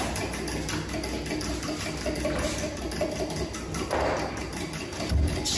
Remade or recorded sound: recorded